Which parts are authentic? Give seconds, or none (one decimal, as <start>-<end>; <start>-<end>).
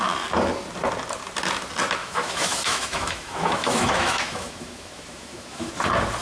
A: 0.0-2.0; 5.7-6.2